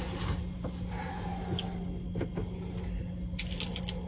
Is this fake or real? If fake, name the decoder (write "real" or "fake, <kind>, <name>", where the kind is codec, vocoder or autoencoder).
real